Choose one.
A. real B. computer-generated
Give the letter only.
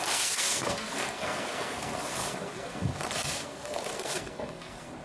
B